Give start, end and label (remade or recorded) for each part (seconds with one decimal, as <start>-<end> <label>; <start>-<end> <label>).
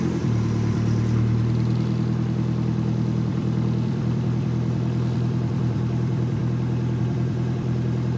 0.0-6.4 remade; 6.4-7.0 recorded; 7.0-8.2 remade